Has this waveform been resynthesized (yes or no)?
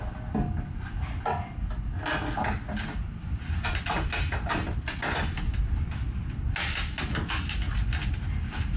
no